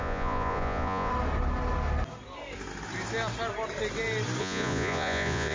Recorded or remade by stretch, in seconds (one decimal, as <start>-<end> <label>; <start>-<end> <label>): 0.0-1.1 remade; 1.1-4.4 recorded; 4.4-5.5 remade